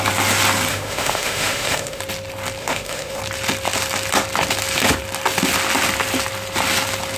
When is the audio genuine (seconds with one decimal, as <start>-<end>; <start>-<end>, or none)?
0.0-0.7; 2.0-2.6; 3.2-7.2